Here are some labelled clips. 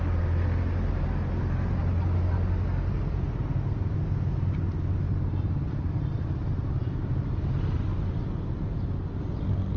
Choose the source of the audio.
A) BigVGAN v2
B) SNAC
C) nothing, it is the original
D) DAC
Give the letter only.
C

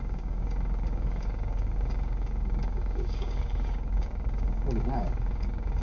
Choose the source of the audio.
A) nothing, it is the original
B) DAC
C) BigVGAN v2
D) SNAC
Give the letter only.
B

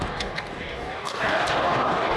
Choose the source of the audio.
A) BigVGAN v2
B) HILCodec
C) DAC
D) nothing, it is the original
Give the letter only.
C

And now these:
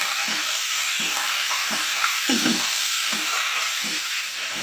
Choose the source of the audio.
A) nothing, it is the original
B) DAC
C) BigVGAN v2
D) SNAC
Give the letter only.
B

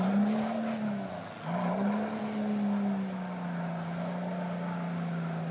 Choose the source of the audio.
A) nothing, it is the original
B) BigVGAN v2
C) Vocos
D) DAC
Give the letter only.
A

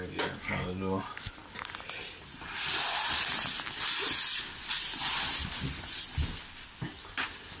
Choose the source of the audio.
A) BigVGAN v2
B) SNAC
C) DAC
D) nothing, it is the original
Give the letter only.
D